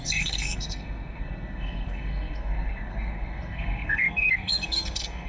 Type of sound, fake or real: fake